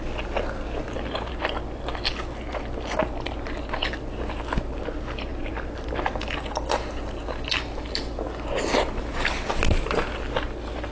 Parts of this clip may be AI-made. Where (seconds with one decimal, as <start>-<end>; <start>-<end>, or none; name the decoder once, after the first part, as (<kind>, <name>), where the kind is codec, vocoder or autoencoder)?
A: none